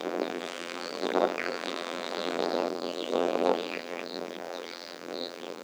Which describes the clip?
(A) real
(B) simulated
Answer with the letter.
B